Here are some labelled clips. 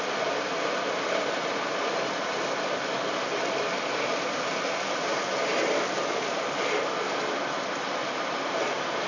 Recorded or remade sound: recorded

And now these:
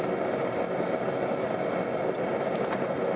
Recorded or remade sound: recorded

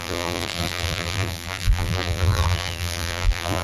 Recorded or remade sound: remade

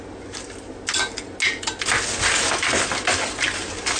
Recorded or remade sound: recorded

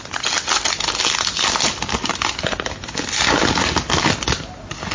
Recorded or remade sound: recorded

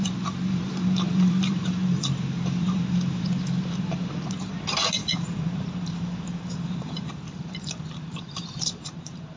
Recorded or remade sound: remade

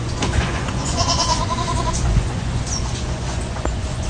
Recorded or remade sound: remade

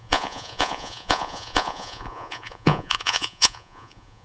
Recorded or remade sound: remade